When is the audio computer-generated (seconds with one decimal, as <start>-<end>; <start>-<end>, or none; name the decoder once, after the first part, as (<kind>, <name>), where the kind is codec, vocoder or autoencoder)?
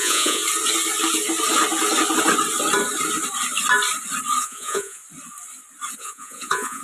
0.0-0.4 (vocoder, Vocos); 4.4-5.0; 6.0-6.8